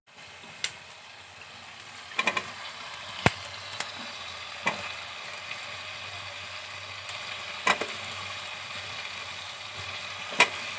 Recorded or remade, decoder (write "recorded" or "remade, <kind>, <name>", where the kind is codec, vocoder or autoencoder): recorded